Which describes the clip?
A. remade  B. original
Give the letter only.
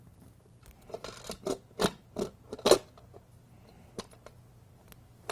B